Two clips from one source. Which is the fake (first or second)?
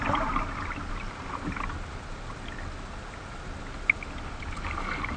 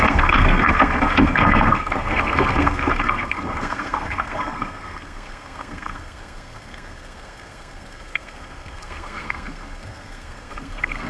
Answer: second